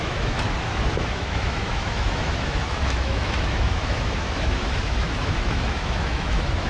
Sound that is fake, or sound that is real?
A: fake